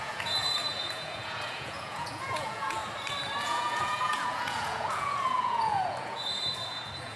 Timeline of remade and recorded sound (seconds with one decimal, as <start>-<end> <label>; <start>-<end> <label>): 0.0-2.8 remade; 2.8-3.4 recorded; 3.4-7.2 remade